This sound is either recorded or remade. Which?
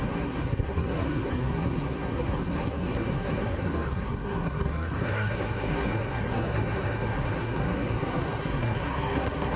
remade